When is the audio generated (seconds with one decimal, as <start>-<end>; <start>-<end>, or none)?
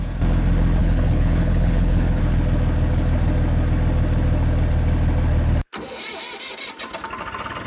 0.8-2.2